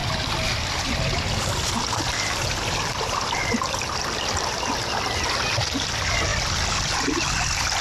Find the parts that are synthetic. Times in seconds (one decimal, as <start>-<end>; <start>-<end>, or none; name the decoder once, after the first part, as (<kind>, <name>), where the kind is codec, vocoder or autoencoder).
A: 0.0-3.8 (vocoder, BigVGAN v2); 6.3-7.8